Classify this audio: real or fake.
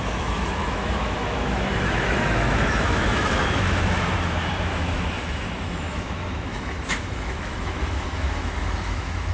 fake